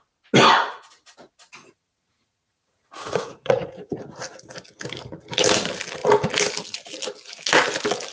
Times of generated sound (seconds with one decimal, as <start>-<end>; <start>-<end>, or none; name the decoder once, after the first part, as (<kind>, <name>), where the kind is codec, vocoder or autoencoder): 1.6-4.0 (vocoder, Vocos)